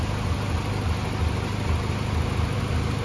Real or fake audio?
real